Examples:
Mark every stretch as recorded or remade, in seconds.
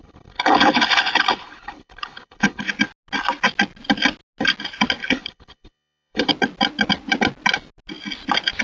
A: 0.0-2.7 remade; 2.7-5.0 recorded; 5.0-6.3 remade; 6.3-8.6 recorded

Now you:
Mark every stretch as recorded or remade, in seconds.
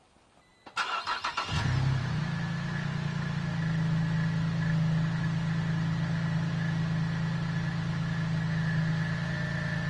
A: 0.0-9.9 recorded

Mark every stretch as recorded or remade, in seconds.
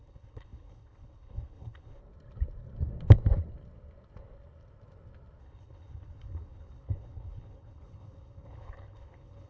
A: 0.0-2.0 remade; 2.0-5.4 recorded; 5.4-9.5 remade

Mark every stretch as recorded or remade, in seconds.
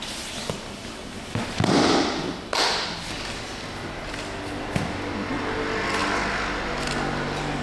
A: 0.0-7.6 recorded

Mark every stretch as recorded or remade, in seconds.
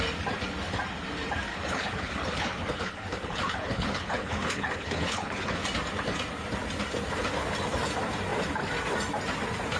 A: 0.0-1.5 recorded; 1.5-5.6 remade; 5.6-9.8 recorded